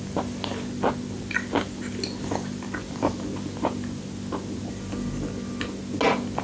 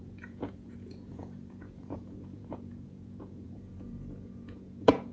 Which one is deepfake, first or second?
second